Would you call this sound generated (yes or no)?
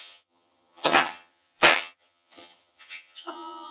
yes